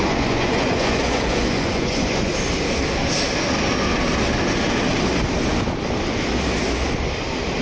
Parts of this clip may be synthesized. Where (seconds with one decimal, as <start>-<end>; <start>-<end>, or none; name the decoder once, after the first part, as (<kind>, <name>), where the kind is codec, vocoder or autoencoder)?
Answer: 0.0-2.3 (vocoder, Vocos)